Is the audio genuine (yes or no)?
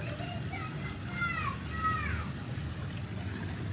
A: yes